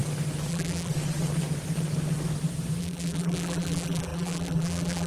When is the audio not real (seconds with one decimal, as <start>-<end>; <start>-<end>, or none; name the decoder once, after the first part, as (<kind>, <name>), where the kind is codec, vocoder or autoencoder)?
0.5-0.9 (vocoder, BigVGAN v2); 2.8-5.1

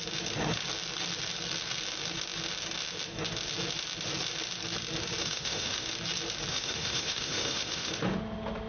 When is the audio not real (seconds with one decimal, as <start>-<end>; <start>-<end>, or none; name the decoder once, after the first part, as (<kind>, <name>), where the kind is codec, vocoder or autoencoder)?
5.2-5.9 (autoencoder, DAC-VAE); 6.5-7.9

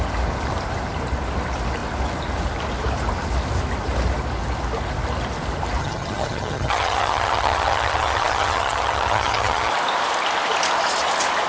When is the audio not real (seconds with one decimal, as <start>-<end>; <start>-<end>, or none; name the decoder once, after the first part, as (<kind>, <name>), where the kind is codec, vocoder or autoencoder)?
5.8-9.7 (vocoder, HiFi-GAN)